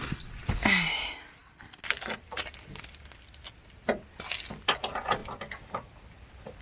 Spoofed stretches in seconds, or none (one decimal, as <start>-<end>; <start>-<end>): 5.2-6.6